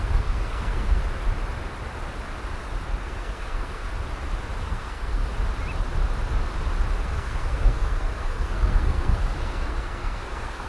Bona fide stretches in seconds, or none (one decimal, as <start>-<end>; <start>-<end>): 1.0-3.0; 3.9-4.6; 5.2-7.0